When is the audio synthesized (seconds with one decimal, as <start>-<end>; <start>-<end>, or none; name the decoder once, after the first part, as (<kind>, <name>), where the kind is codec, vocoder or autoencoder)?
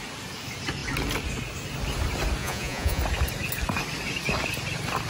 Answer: 2.4-3.0 (vocoder, Vocos)